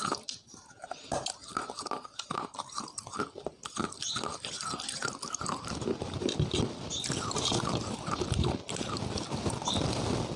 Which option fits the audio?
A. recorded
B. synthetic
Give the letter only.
A